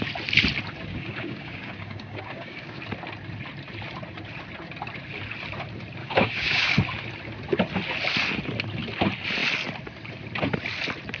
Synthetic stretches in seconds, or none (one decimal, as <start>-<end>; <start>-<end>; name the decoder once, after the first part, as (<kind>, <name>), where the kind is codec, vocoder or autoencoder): 0.9-2.8 (codec, DAC); 6.0-6.7

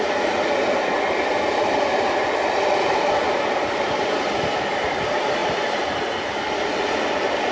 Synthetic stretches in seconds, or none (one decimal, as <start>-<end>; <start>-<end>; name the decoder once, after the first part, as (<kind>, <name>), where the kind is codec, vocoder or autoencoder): 5.4-6.4 (vocoder, BigVGAN v2)

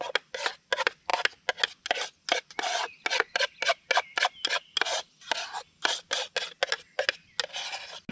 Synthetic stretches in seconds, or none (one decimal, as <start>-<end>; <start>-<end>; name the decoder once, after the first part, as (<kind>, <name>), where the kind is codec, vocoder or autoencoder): none

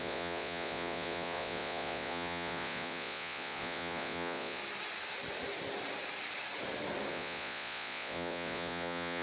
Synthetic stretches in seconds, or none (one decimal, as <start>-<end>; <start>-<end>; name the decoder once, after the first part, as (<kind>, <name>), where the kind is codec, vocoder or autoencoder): 0.0-4.6 (vocoder, Vocos); 7.1-9.2

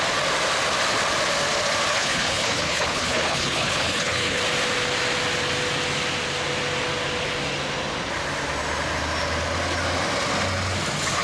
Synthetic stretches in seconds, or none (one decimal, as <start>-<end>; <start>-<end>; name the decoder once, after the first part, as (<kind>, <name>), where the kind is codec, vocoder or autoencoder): 1.9-4.4 (codec, HILCodec)

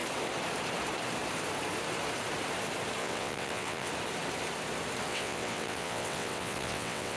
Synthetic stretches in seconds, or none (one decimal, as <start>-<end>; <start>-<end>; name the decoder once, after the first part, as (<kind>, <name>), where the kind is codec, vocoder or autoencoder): 3.0-3.9 (vocoder, WaveNeXt); 5.1-7.2